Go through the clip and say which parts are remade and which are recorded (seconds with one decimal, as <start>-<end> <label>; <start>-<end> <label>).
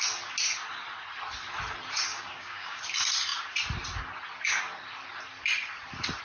0.0-2.1 recorded; 2.1-2.8 remade; 2.8-6.2 recorded